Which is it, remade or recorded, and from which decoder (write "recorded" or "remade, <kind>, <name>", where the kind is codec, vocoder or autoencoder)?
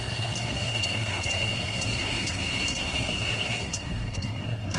remade, codec, SNAC